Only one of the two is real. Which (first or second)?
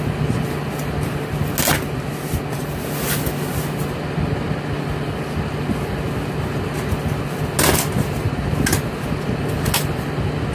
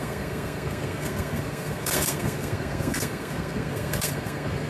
first